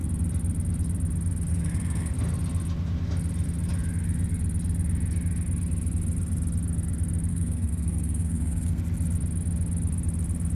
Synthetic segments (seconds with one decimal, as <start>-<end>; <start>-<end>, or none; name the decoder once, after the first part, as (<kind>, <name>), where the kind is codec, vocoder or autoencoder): 1.5-2.1 (codec, SNAC); 7.3-8.8

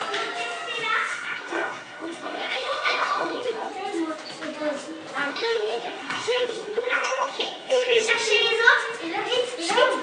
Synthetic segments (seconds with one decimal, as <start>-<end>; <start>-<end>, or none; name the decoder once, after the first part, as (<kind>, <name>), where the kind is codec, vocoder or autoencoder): 1.1-3.7 (codec, SNAC); 5.3-8.1

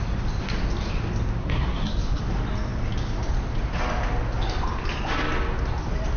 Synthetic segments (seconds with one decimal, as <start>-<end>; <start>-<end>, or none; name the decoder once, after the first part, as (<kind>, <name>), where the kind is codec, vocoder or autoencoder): 1.4-2.2 (codec, SNAC)

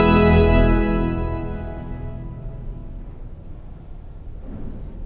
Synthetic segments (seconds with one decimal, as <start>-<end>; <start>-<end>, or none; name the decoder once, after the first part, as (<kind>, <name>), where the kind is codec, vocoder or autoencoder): none

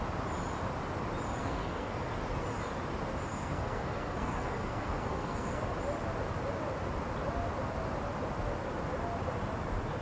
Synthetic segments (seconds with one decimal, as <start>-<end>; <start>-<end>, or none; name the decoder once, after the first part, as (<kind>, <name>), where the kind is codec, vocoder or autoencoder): 1.4-2.1 (codec, SNAC); 3.3-5.6

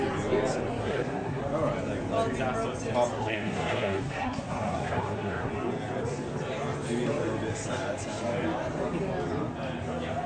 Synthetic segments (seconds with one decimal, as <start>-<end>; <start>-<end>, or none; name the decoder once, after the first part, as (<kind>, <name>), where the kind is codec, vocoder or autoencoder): 0.8-1.4 (codec, SNAC); 3.1-5.5

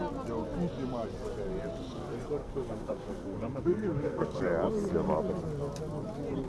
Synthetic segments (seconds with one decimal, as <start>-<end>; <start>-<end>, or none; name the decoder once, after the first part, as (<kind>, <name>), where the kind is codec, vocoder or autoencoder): 2.4-4.4 (codec, SNAC)

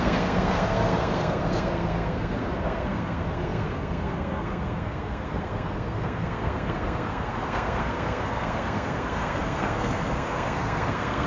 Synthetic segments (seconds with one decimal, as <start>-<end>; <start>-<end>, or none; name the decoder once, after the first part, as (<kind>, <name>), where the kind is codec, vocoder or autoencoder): 0.0-11.3 (codec, SNAC)